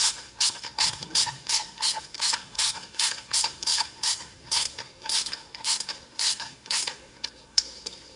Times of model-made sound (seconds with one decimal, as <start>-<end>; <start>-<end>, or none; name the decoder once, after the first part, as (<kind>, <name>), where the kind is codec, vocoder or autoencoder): 0.0-8.2 (codec, SNAC)